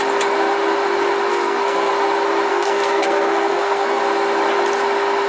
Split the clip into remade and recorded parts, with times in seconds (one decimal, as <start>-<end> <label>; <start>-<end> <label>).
0.0-1.3 recorded; 1.3-1.9 remade; 1.9-2.5 recorded; 2.5-4.0 remade; 4.0-5.3 recorded